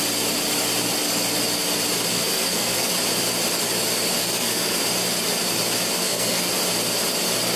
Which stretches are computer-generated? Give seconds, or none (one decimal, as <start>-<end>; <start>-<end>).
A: 2.1-2.9; 4.2-4.8; 6.0-6.5